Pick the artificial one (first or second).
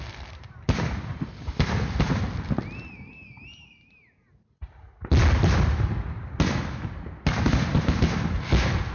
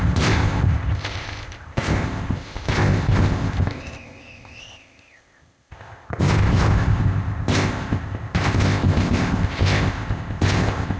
second